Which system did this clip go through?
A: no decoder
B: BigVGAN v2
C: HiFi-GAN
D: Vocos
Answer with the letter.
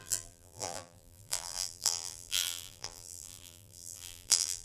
B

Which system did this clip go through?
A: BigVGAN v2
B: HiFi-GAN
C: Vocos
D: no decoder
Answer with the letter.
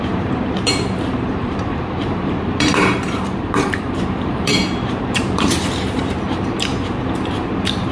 A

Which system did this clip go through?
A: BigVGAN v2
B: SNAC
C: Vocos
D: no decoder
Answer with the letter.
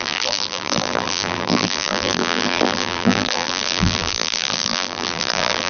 A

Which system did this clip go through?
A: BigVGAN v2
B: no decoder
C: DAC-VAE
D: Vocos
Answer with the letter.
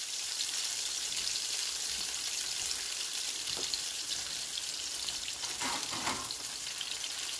A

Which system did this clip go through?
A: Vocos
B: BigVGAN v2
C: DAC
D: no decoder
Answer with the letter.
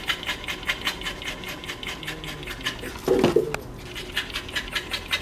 D